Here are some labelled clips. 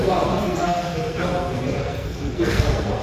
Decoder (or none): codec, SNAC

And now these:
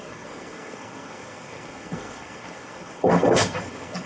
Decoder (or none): codec, SNAC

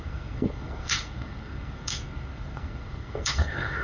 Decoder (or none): codec, SNAC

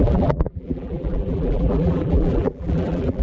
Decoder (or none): vocoder, BigVGAN v2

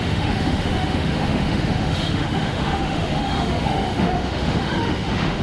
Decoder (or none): autoencoder, DAC-VAE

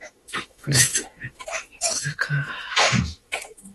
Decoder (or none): autoencoder, DAC-VAE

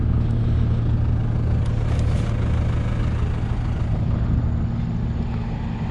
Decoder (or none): none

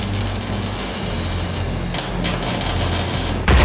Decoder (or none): none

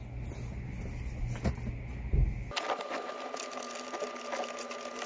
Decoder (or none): none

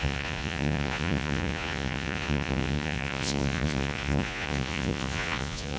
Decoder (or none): vocoder, Vocos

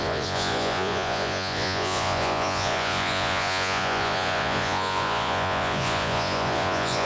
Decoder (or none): vocoder, Vocos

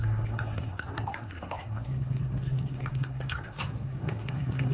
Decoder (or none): codec, SNAC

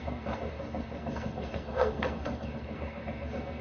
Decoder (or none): codec, SNAC